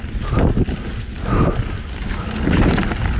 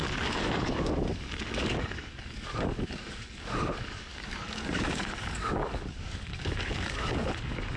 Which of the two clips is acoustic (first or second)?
first